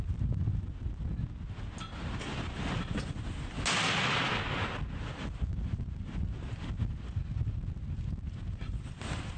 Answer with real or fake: real